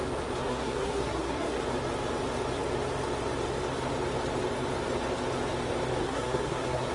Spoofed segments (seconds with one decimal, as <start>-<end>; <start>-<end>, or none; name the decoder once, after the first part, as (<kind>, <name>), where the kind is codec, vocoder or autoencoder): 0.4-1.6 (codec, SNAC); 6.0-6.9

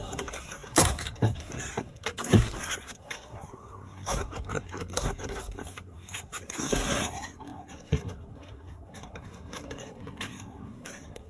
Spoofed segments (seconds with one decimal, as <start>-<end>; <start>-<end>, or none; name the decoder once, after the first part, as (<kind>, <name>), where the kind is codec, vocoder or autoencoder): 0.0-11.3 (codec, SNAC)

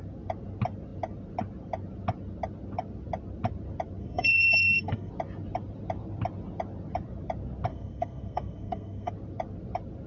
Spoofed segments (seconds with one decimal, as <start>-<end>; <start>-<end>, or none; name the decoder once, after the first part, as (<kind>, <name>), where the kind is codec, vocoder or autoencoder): 4.0-5.1 (codec, SNAC); 7.7-9.1

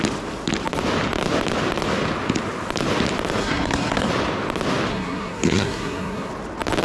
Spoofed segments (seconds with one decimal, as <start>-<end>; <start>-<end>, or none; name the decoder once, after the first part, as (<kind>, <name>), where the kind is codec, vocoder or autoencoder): 3.4-4.1 (codec, SNAC); 4.9-6.3

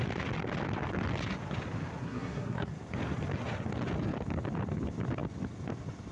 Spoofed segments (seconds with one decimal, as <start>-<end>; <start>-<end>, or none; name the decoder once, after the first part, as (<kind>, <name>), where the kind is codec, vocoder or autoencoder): 2.0-2.7 (codec, SNAC)

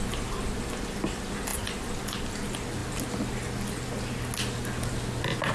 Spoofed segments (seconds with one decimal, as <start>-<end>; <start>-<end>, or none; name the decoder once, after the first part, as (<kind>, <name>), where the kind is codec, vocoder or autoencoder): none

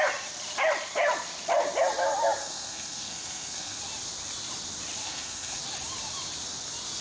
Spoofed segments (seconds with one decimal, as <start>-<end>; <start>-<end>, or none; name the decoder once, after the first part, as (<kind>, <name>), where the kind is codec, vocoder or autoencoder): 2.4-3.8 (codec, SNAC); 5.0-5.6